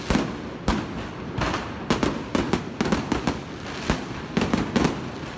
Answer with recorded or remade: recorded